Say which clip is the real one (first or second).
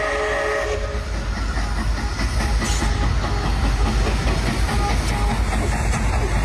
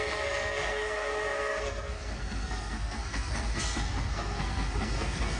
first